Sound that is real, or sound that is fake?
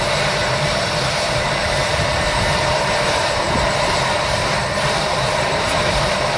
fake